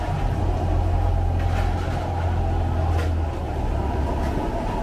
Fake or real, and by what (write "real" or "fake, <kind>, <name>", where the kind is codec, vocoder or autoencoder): real